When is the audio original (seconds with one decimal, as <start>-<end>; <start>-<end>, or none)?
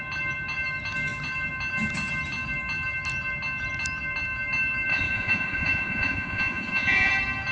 0.0-4.9; 7.1-7.5